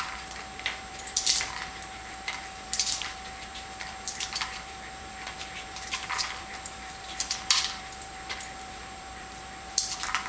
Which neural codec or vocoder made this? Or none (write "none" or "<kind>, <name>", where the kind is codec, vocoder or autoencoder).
vocoder, BigVGAN v2